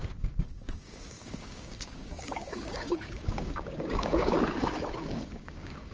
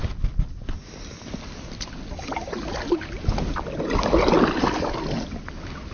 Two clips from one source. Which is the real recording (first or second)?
second